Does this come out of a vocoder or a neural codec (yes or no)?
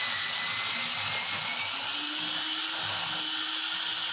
no